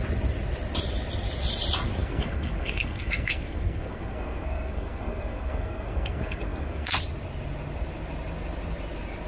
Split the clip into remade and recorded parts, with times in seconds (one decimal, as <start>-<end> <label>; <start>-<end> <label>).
0.0-2.0 recorded; 2.0-6.9 remade; 6.9-9.3 recorded